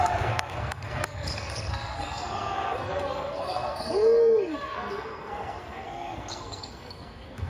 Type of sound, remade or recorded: remade